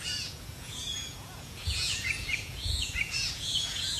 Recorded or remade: remade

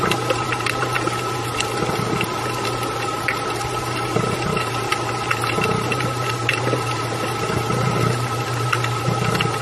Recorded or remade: recorded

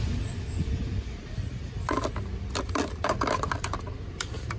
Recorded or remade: recorded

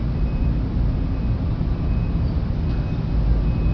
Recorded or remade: recorded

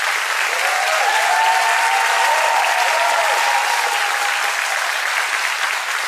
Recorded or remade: recorded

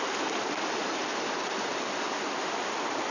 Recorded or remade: recorded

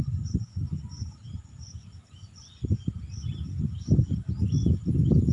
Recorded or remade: recorded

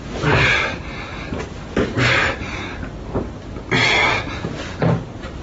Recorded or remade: recorded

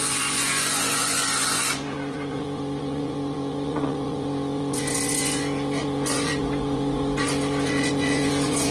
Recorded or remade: remade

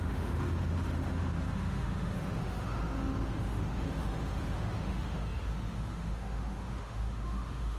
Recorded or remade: remade